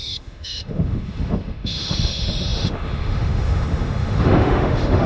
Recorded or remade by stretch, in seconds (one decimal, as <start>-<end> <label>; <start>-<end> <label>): 0.0-5.1 remade